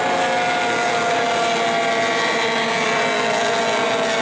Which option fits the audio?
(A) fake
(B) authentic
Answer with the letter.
B